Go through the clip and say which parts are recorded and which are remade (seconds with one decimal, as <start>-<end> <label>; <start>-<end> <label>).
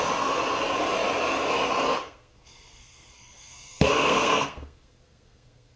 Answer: 0.0-2.0 recorded; 2.0-5.8 remade